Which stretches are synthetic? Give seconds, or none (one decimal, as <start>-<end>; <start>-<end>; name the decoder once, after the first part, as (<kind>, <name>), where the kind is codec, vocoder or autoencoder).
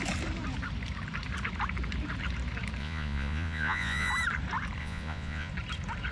2.8-4.1 (vocoder, Vocos); 4.8-5.5